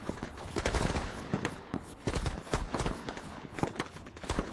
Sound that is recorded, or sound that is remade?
remade